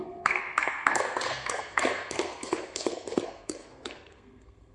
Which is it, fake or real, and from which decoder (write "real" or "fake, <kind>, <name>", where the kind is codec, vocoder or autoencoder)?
fake, codec, SNAC